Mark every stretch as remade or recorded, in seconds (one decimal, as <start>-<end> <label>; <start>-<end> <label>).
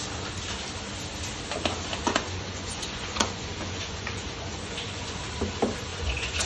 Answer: 0.0-2.0 recorded; 2.0-5.2 remade; 5.2-5.9 recorded; 5.9-6.5 remade